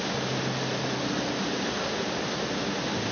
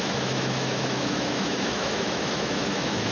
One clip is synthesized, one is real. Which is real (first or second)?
first